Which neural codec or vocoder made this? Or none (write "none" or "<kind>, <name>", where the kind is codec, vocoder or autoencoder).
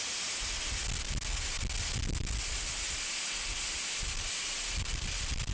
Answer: none